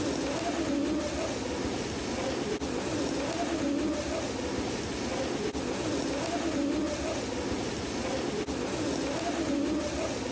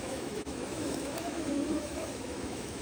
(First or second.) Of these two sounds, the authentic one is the first